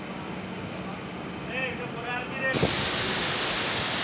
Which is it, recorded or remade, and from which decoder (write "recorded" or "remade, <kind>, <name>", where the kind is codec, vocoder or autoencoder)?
recorded